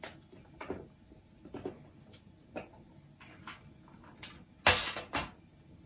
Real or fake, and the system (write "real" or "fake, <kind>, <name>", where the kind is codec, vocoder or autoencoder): real